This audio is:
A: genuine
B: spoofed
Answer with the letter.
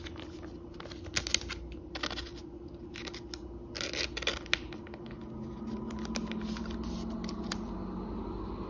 A